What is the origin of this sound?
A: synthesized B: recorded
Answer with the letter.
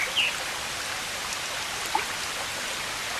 B